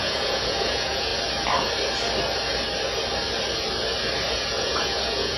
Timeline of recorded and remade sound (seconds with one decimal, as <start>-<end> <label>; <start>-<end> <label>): 0.0-1.1 remade; 1.1-4.3 recorded; 4.3-5.4 remade

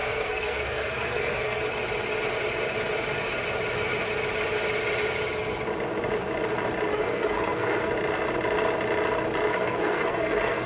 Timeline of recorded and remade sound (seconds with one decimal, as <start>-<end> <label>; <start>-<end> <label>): 0.0-1.6 remade; 1.6-6.9 recorded; 6.9-7.9 remade; 7.9-9.5 recorded; 9.5-10.7 remade

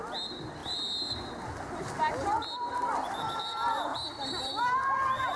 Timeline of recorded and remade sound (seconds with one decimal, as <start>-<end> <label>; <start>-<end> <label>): 0.0-0.6 recorded; 0.6-1.1 remade; 1.1-3.9 recorded; 3.9-4.6 remade; 4.6-5.4 recorded

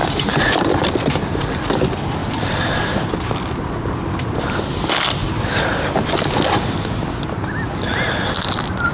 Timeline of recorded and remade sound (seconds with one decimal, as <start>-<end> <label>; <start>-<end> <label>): 0.0-0.7 remade; 0.7-2.2 recorded; 2.2-3.1 remade; 3.1-5.2 recorded; 5.2-6.1 remade; 6.1-8.9 recorded

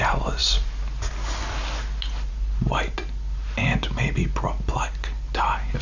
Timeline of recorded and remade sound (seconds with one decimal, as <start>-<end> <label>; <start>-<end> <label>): 0.0-5.8 recorded

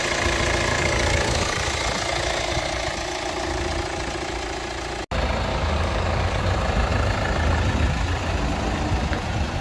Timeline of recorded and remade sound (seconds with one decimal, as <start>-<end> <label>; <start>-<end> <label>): 0.0-0.7 recorded; 0.7-1.6 remade; 1.6-5.5 recorded; 5.5-6.4 remade; 6.4-9.6 recorded

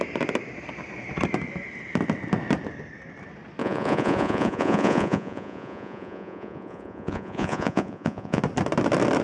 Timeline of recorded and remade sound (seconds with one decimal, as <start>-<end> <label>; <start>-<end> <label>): 0.0-3.6 recorded; 3.6-8.4 remade; 8.4-9.2 recorded